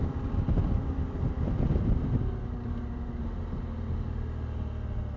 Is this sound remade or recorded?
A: recorded